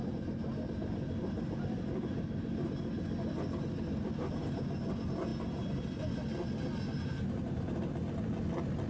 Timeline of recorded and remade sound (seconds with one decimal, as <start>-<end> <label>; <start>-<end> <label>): 0.0-8.9 recorded